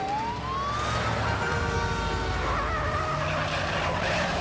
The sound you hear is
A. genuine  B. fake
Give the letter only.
A